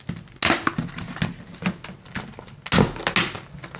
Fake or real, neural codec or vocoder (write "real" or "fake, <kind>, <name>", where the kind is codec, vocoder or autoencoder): real